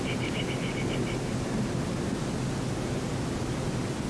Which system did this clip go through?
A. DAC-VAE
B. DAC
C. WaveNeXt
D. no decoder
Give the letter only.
D